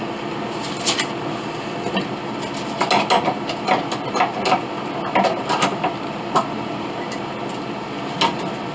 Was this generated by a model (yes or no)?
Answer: no